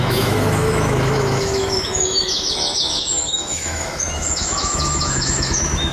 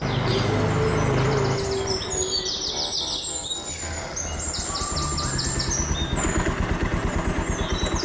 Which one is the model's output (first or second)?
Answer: first